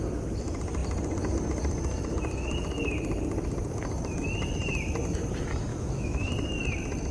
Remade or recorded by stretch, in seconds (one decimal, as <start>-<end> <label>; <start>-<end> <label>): 0.0-5.7 recorded; 5.7-6.3 remade; 6.3-7.1 recorded